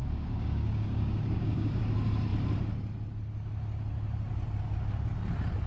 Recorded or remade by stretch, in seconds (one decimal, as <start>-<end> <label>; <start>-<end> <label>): 0.0-1.8 remade; 1.8-5.7 recorded